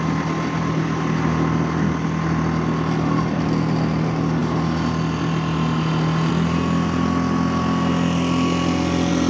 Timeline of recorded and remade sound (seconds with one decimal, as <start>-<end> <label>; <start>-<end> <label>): 0.0-9.3 recorded